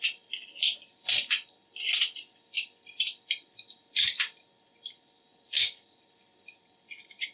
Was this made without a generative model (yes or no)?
no